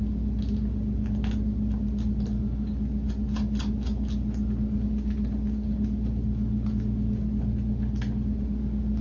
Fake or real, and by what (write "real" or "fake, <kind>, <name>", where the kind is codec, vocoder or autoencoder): real